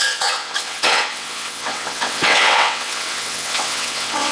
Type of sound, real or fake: fake